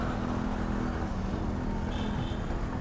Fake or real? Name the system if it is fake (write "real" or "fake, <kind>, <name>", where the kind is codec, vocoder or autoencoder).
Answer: real